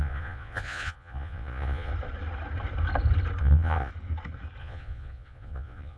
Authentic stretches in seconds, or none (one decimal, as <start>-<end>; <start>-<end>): 1.9-3.4; 3.9-4.6